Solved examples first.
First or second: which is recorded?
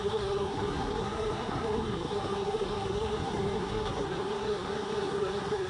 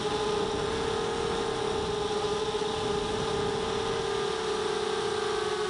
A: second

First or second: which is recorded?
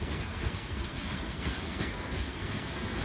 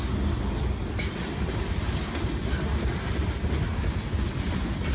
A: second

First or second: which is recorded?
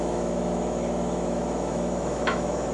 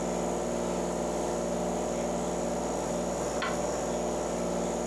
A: second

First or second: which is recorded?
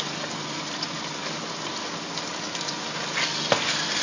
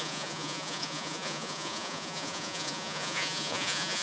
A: first